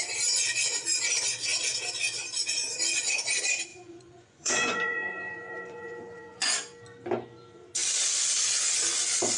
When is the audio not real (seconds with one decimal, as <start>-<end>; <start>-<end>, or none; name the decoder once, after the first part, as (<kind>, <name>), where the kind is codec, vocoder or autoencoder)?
3.7-6.5 (vocoder, Vocos)

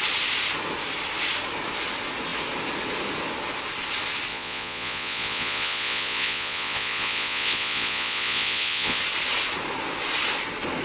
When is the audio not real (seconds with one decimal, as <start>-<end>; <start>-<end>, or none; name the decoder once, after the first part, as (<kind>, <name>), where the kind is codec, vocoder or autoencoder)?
4.3-9.0 (vocoder, Vocos)

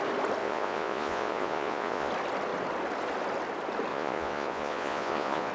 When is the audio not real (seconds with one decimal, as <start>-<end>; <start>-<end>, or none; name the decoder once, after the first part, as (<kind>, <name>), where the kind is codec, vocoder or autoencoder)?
0.4-2.1 (vocoder, Vocos); 3.9-5.5

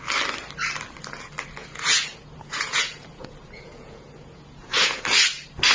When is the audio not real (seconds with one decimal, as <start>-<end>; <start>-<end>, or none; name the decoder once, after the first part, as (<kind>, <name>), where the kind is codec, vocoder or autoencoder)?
1.6-5.0 (vocoder, Vocos)